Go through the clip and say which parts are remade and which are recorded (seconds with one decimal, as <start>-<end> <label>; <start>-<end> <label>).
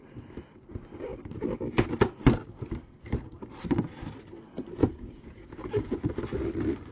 0.0-4.8 recorded; 4.8-6.1 remade; 6.1-6.9 recorded